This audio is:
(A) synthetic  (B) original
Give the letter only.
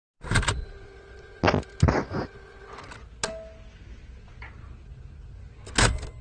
B